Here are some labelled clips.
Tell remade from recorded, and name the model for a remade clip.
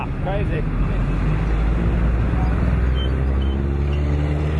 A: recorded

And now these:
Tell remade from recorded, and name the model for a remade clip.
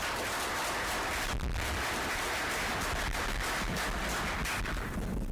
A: recorded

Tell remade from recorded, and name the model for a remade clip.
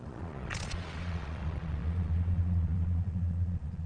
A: remade, vocoder, Vocos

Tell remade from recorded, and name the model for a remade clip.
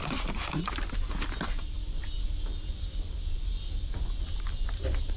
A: recorded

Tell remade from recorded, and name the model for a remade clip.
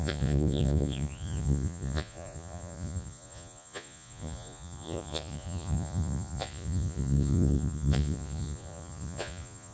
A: remade, vocoder, Vocos